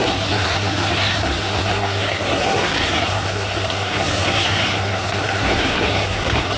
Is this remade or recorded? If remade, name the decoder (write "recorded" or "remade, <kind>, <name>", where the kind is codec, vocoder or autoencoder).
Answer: remade, codec, SNAC